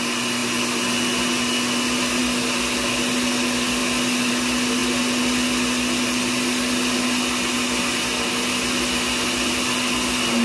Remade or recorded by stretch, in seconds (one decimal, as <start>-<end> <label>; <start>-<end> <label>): 0.0-10.4 recorded